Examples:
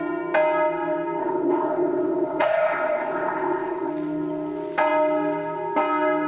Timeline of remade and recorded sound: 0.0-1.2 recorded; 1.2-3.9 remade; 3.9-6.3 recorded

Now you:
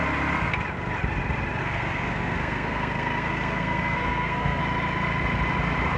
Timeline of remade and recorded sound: 0.0-1.6 recorded; 1.6-4.6 remade; 4.6-6.0 recorded

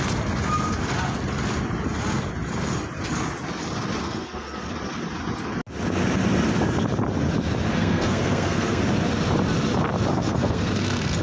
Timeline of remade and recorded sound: 0.0-4.0 recorded; 4.0-4.7 remade; 4.7-7.7 recorded; 7.7-8.8 remade; 8.8-10.1 recorded; 10.1-11.2 remade

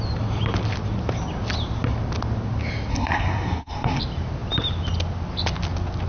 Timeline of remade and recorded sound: 0.0-2.9 recorded; 2.9-4.0 remade; 4.0-6.1 recorded